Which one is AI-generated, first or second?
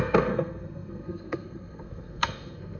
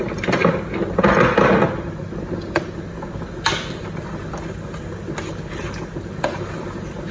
first